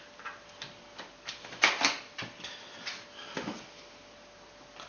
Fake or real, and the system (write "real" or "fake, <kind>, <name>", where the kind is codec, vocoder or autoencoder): real